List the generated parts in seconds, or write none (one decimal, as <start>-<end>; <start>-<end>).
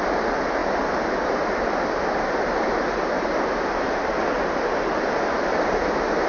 none